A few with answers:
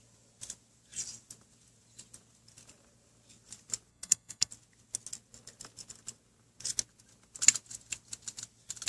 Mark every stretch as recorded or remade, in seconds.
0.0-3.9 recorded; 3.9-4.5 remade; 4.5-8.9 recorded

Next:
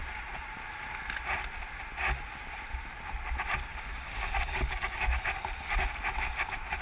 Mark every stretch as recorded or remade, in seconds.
0.0-3.7 recorded; 3.7-5.2 remade; 5.2-6.8 recorded

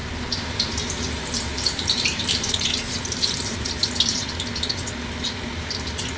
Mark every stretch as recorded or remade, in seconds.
0.0-3.7 remade; 3.7-6.2 recorded